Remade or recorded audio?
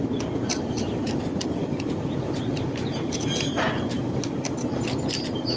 recorded